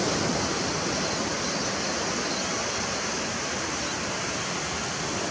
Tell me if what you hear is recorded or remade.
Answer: recorded